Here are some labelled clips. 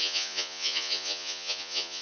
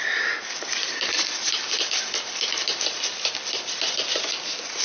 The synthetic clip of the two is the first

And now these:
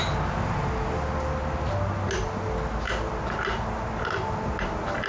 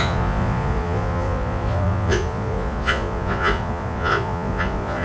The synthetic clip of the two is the second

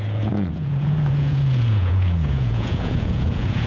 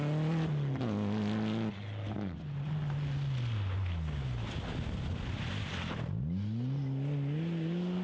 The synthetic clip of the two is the first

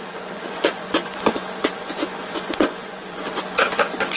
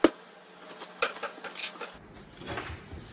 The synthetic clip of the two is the first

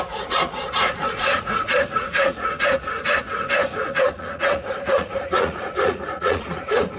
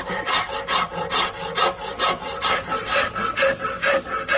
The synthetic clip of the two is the first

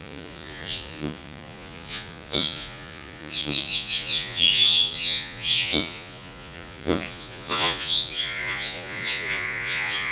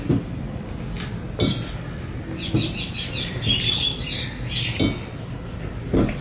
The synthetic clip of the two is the first